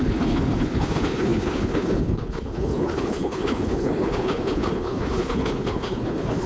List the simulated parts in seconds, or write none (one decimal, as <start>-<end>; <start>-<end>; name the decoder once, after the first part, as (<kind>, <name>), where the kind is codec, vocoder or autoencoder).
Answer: 0.0-6.5 (codec, HILCodec)